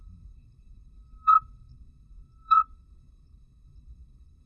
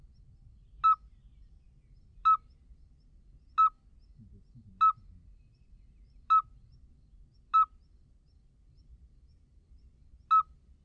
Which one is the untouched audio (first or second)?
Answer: second